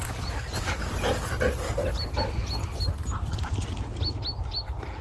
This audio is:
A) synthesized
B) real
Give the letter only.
B